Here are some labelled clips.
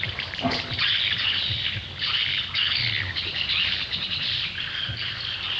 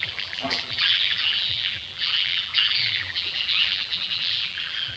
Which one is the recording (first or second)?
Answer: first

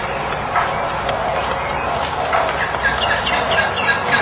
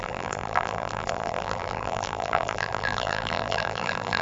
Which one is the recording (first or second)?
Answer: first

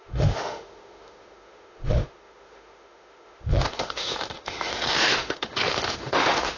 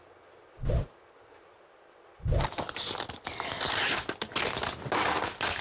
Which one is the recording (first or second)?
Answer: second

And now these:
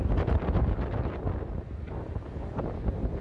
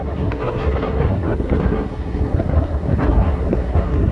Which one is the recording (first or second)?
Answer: first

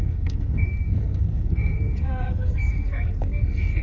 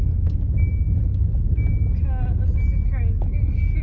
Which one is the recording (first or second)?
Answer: second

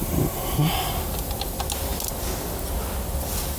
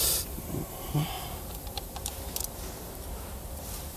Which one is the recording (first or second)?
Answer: first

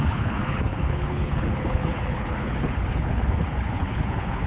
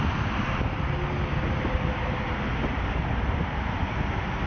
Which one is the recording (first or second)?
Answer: second